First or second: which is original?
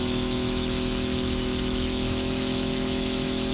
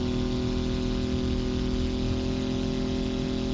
second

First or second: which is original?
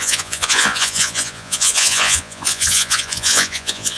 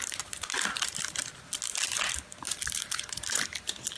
second